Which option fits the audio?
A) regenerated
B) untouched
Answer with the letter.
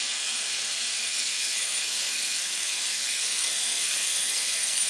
A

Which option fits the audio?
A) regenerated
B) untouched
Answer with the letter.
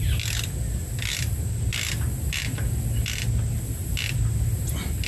B